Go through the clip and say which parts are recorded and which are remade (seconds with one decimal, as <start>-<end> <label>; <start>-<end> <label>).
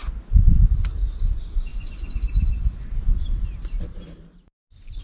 0.0-5.0 recorded